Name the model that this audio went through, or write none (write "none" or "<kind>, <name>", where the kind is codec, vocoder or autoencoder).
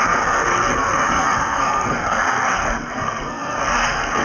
codec, SNAC